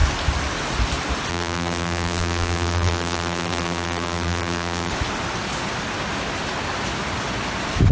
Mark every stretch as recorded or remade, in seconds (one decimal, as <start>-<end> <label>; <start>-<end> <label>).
0.0-1.3 recorded; 1.3-4.9 remade; 4.9-7.9 recorded